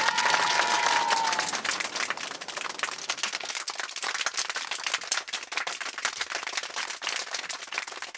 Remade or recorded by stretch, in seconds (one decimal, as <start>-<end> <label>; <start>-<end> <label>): 0.0-3.0 recorded; 3.0-3.7 remade; 3.7-8.2 recorded